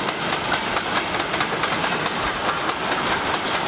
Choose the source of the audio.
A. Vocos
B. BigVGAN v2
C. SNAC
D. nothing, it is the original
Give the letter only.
D